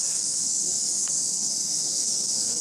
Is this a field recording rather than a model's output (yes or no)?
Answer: no